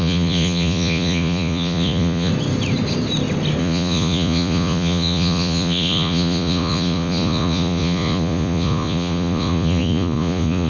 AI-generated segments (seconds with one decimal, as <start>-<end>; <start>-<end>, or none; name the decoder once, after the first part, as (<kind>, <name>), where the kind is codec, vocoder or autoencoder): 0.0-2.3 (vocoder, Vocos); 3.6-10.7